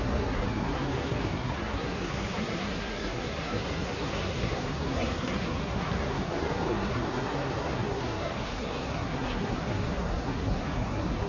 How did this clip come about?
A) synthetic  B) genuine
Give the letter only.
A